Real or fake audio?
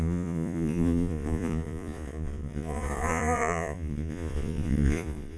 fake